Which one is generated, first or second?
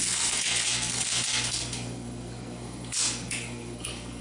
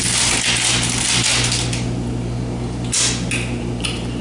first